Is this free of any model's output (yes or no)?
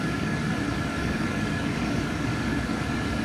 no